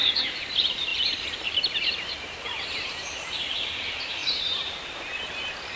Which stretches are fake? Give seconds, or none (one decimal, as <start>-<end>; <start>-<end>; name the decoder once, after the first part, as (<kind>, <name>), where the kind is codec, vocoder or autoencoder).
0.0-5.8 (vocoder, BigVGAN v2)